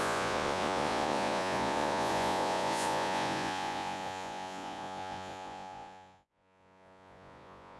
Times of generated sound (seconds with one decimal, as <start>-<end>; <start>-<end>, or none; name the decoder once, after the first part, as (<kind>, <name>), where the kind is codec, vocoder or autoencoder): 0.0-7.8 (vocoder, Vocos)